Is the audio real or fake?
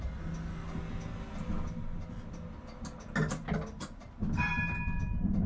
real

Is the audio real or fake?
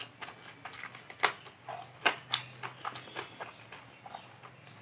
real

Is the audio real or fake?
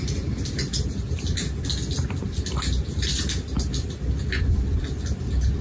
real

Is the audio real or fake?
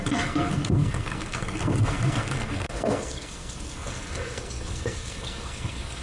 fake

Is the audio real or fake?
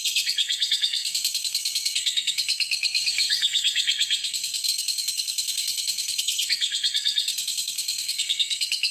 fake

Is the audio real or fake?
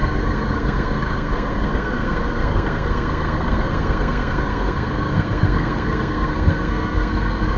fake